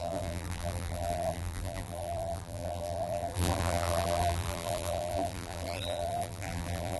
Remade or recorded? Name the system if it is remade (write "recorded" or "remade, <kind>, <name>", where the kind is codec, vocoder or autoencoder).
remade, vocoder, BigVGAN v2